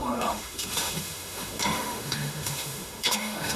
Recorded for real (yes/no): no